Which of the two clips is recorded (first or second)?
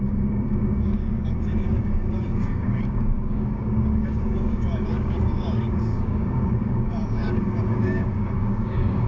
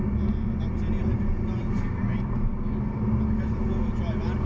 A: second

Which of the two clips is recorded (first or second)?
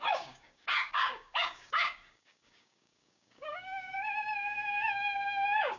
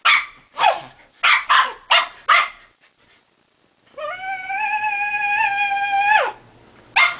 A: second